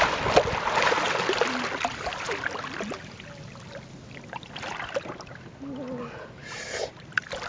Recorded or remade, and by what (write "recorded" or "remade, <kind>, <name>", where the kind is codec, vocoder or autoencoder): recorded